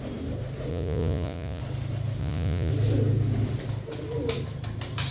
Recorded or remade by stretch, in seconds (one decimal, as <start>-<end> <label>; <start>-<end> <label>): 0.0-0.7 recorded; 0.7-1.6 remade; 1.6-2.2 recorded; 2.2-2.7 remade; 2.7-5.1 recorded